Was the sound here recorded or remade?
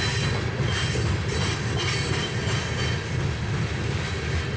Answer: recorded